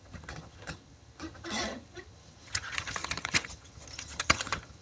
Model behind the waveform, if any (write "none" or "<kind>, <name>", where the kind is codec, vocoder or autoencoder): vocoder, HiFi-GAN